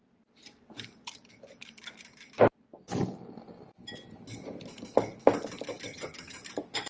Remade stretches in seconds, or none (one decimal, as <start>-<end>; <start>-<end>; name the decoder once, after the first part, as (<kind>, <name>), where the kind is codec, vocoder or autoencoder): 5.9-6.4 (vocoder, HiFi-GAN)